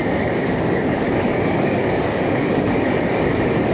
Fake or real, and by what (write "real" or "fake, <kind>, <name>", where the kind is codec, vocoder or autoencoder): fake, codec, DAC